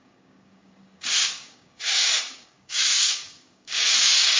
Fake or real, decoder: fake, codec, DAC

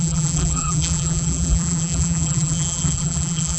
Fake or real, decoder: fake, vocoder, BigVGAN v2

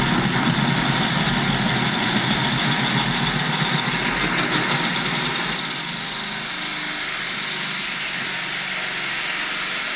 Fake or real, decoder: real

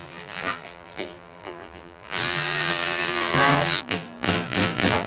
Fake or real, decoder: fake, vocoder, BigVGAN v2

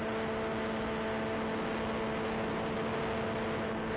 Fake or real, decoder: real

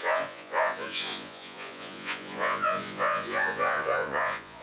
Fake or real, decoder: fake, vocoder, Vocos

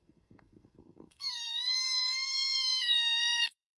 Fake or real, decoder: fake, codec, SNAC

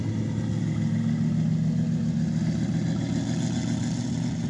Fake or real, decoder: real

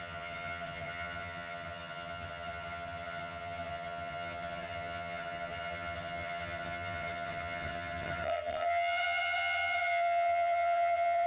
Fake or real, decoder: fake, vocoder, HiFi-GAN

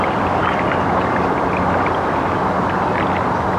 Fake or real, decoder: real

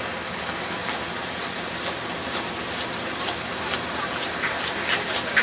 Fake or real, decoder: real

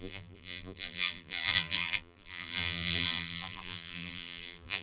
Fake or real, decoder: fake, vocoder, BigVGAN v2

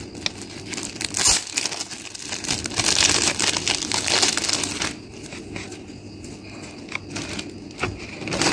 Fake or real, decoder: real